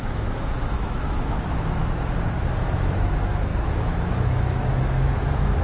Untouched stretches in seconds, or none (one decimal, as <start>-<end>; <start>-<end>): 1.8-2.6